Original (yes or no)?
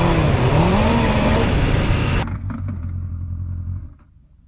yes